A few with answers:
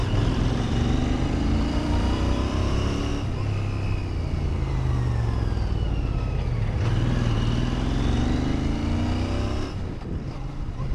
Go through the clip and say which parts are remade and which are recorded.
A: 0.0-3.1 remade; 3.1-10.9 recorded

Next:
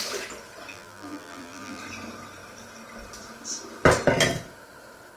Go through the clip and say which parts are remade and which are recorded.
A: 0.0-0.7 recorded; 0.7-1.8 remade; 1.8-5.2 recorded